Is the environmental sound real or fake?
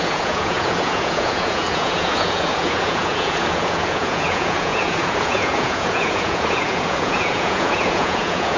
fake